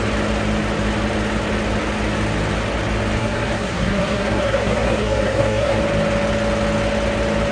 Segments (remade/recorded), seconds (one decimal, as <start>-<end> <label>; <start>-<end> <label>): 0.0-3.2 recorded; 3.2-5.8 remade; 5.8-7.5 recorded